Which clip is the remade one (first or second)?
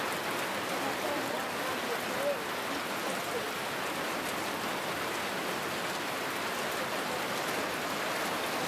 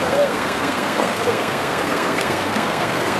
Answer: second